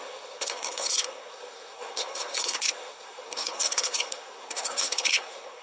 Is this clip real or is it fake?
fake